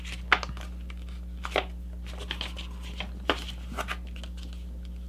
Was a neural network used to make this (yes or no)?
no